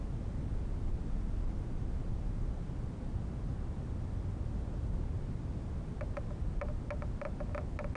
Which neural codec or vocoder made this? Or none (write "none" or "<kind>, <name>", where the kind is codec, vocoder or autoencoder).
none